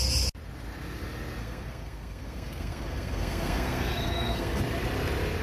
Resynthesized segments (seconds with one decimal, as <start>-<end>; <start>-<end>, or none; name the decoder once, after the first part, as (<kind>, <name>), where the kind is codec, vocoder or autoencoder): 1.4-4.6 (codec, SNAC)